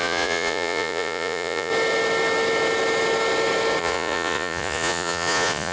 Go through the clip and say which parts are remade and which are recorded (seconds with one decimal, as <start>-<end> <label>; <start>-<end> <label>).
0.0-1.7 remade; 1.7-3.8 recorded; 3.8-5.7 remade